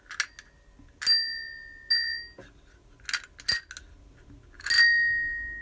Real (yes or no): yes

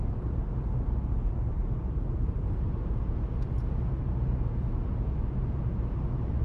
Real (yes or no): no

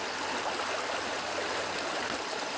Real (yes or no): yes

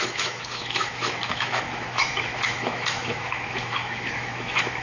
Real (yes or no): no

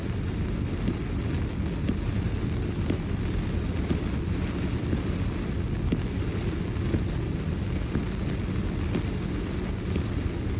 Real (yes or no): yes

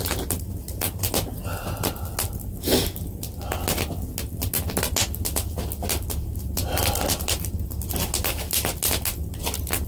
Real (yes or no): yes